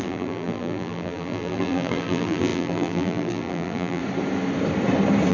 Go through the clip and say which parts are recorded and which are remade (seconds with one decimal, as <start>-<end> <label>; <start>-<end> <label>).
0.0-4.0 remade; 4.0-5.3 recorded